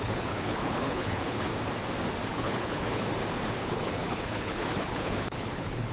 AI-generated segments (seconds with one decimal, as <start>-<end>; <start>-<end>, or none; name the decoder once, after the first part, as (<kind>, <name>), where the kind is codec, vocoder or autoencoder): 0.0-1.5 (codec, HILCodec); 2.3-3.1; 3.6-5.9